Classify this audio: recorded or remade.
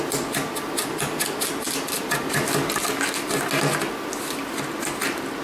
recorded